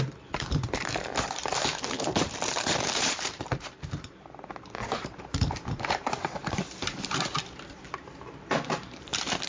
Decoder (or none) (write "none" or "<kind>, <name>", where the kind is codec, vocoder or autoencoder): vocoder, BigVGAN v2